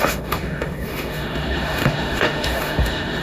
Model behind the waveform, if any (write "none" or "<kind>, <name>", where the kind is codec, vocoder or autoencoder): autoencoder, DAC-VAE